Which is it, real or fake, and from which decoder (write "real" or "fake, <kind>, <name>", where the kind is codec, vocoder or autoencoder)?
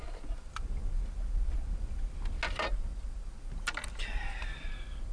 real